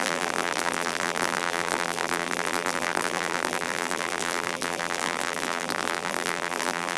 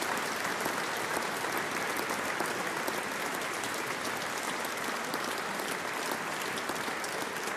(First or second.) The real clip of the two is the second